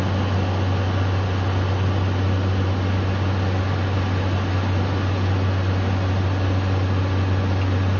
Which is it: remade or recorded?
recorded